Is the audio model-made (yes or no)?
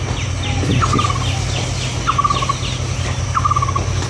no